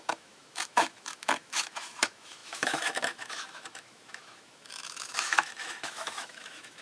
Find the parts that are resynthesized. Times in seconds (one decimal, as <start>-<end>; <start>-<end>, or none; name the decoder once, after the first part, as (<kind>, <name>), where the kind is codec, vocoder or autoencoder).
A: 0.0-6.8 (autoencoder, DAC-VAE)